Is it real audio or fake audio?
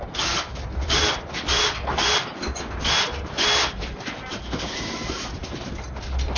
real